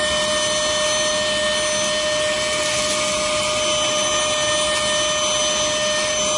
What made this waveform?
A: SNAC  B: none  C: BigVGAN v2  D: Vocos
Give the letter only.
B